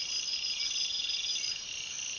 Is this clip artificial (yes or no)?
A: no